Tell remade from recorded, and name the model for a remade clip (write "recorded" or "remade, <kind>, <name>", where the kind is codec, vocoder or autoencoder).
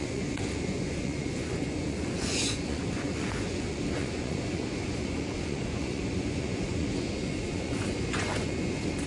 remade, vocoder, Vocos